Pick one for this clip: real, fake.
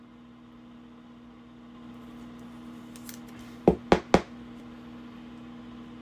real